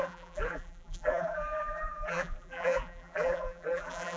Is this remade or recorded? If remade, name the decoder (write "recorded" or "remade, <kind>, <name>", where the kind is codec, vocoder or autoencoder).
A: remade, vocoder, BigVGAN v2